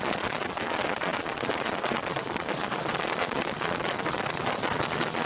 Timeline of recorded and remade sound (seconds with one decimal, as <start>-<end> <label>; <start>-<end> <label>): 0.0-5.3 remade